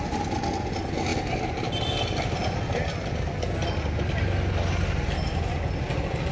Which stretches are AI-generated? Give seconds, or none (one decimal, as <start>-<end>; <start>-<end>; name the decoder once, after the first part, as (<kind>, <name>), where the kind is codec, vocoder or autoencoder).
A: none